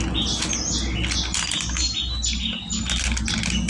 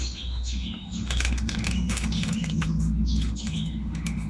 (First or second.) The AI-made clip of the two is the second